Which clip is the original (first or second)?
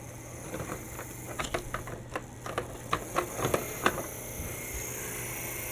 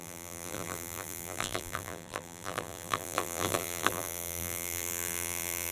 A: first